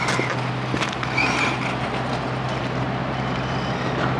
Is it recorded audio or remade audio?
recorded